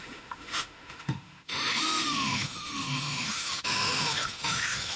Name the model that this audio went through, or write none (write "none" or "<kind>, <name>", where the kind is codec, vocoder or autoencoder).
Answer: autoencoder, DAC-VAE